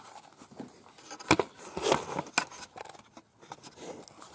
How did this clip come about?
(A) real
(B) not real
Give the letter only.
A